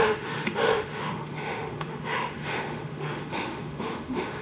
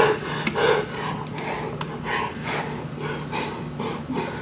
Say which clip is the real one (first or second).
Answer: second